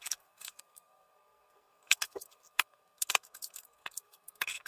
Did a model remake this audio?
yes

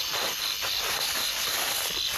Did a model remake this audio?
no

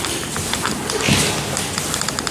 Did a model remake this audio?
no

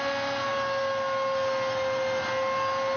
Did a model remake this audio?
no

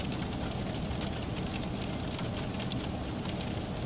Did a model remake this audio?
no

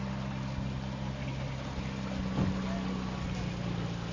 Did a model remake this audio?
no